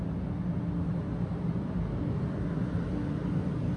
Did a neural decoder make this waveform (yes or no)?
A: no